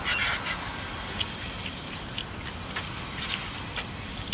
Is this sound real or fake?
real